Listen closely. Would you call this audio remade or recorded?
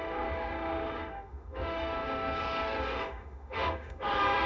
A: remade